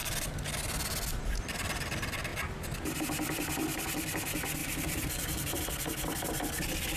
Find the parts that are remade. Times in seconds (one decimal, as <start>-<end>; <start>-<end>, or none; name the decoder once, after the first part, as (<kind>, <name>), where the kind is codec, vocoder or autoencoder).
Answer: 4.6-5.6 (vocoder, BigVGAN v2)